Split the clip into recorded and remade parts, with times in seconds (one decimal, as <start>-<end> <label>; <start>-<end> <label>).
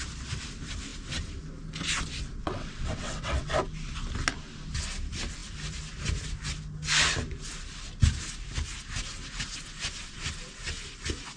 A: 0.0-2.4 recorded; 2.4-3.5 remade; 3.5-11.4 recorded